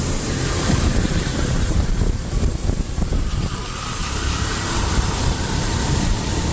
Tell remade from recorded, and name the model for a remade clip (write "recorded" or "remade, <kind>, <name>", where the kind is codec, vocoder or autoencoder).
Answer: remade, vocoder, BigVGAN v2